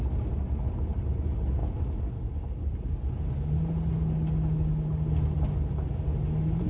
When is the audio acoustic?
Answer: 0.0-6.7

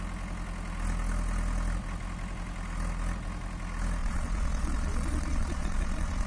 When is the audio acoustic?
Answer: 0.0-4.0